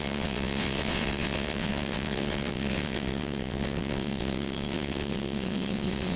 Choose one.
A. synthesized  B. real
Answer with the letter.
A